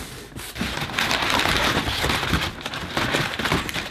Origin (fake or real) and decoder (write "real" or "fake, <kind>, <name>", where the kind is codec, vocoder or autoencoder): real